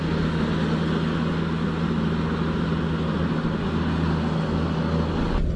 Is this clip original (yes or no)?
yes